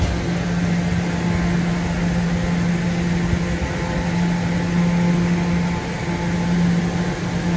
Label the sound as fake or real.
real